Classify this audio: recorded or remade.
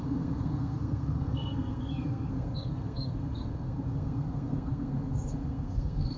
remade